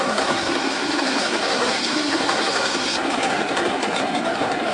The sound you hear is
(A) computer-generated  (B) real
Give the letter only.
A